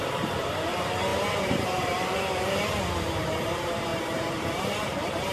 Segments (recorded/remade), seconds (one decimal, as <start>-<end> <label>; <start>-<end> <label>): 0.0-5.3 remade